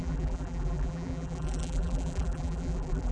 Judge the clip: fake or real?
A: fake